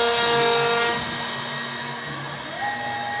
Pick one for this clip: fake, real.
real